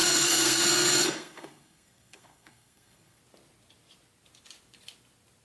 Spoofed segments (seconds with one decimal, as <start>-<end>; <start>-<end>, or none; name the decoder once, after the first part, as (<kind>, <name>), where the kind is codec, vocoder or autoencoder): 0.0-3.2 (codec, SNAC)